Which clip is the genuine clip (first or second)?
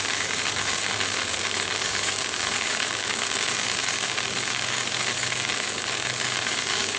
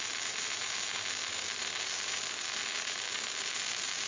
second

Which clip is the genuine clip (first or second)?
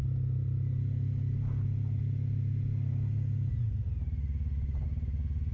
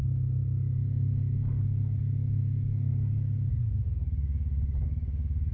first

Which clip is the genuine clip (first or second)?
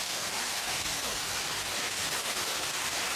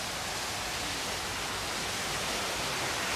second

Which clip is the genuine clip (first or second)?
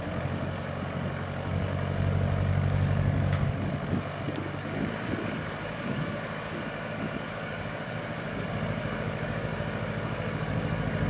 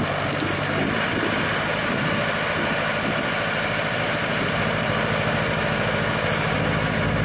second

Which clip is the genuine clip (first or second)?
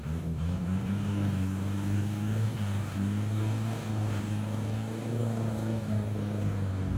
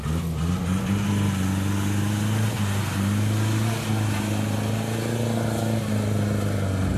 second